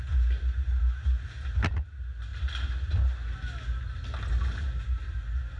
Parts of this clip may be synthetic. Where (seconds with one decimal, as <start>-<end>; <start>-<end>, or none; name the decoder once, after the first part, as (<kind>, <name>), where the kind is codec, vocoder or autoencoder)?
none